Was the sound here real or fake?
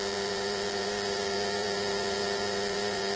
fake